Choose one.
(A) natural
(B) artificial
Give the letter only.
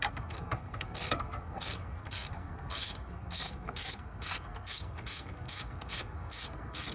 B